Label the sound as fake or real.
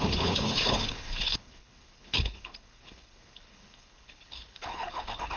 fake